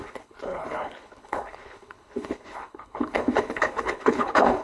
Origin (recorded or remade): remade